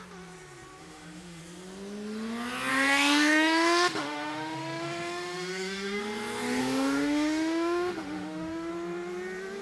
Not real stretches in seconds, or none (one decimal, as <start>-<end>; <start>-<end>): 0.8-1.4; 2.7-6.0; 6.6-8.7